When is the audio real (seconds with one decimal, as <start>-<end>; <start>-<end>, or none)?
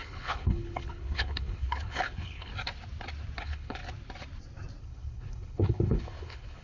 2.5-3.4; 3.8-4.8